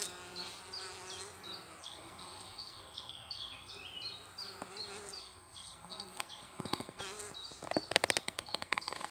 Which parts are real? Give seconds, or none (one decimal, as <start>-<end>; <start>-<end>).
0.0-1.8; 3.7-5.2; 7.0-8.2